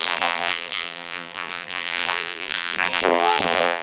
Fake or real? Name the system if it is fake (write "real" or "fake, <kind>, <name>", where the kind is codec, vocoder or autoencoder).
fake, vocoder, BigVGAN v2